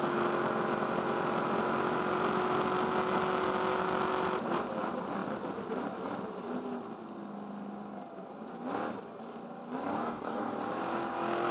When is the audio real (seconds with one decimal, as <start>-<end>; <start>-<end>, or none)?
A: 0.0-9.9; 10.5-11.5

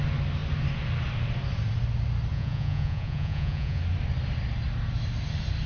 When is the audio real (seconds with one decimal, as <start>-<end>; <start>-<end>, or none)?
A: 0.0-2.3; 3.8-5.7

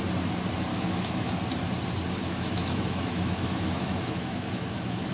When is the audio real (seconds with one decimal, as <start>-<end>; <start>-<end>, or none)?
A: 0.0-0.7; 1.3-2.2

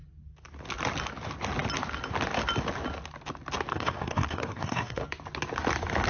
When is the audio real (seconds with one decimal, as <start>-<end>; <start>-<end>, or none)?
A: 0.0-3.7; 5.0-6.1

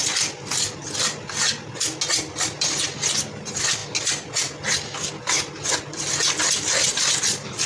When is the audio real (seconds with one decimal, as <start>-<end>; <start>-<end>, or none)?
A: 0.0-2.2; 3.8-6.5

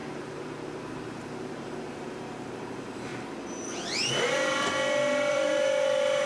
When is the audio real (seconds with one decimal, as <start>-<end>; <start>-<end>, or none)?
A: 3.1-5.3

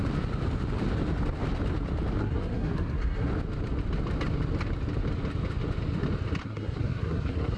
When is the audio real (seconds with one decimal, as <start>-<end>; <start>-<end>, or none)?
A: 0.0-2.2; 3.3-6.4